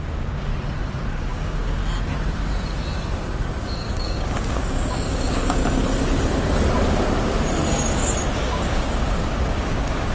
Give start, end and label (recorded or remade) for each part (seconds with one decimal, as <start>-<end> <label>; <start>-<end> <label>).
0.0-0.5 remade; 0.5-1.1 recorded; 1.1-1.8 remade; 1.8-3.6 recorded; 3.6-5.6 remade; 5.6-8.2 recorded; 8.2-10.1 remade

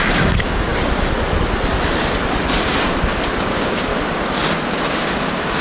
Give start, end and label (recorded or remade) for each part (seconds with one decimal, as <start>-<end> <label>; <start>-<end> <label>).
0.0-0.7 remade; 0.7-3.4 recorded; 3.4-3.9 remade; 3.9-4.9 recorded; 4.9-5.6 remade

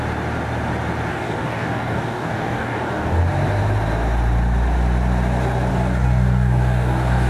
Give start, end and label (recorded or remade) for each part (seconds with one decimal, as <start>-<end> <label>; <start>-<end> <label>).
0.0-1.1 recorded; 1.1-3.2 remade; 3.2-5.7 recorded; 5.7-7.3 remade

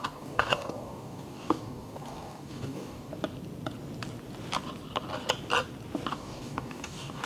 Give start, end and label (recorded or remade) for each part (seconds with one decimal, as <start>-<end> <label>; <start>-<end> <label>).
0.0-3.1 remade; 3.1-6.1 recorded; 6.1-7.3 remade

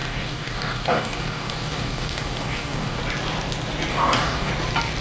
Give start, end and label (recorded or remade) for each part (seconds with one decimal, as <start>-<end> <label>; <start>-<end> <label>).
0.0-3.0 remade; 3.0-3.9 recorded; 3.9-4.5 remade; 4.5-5.0 recorded